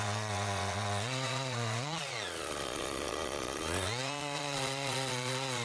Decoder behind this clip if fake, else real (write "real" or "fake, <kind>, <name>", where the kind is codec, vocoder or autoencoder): fake, vocoder, Vocos